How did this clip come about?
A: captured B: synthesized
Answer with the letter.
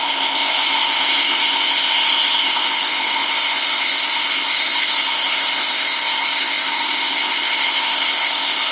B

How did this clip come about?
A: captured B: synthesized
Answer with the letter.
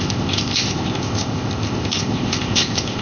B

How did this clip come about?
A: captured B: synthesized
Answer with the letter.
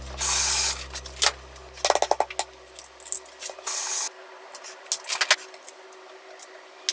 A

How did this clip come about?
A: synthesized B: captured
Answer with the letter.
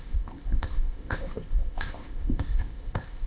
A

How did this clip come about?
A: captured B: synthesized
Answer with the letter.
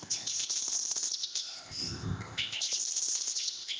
B